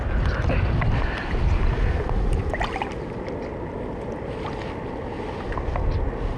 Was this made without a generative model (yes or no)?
yes